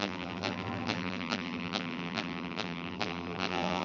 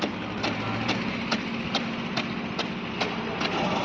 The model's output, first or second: first